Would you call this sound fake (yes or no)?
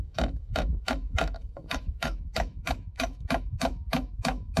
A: yes